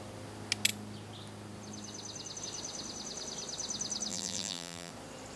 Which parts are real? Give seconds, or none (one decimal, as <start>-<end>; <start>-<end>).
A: 0.0-4.1; 4.9-5.4